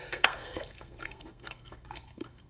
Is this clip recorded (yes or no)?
no